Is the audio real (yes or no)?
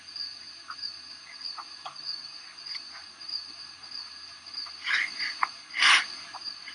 yes